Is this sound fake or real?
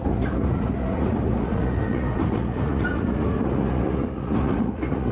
fake